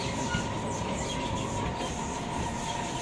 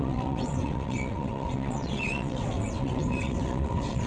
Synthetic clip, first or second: second